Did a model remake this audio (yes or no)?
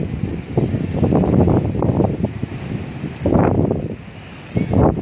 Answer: no